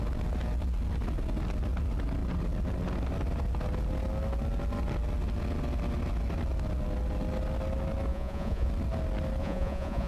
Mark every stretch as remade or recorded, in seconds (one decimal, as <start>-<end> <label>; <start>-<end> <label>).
0.0-8.1 recorded; 8.1-8.7 remade; 8.7-9.4 recorded; 9.4-10.1 remade